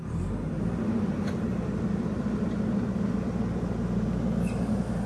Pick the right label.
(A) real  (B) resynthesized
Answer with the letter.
A